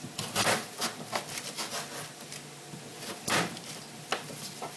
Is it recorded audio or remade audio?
recorded